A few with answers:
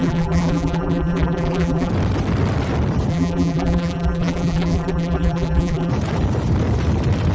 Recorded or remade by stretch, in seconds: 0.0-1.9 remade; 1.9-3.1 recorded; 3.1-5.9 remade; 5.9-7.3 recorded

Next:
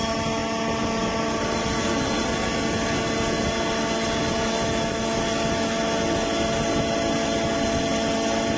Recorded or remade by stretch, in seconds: 0.0-8.6 recorded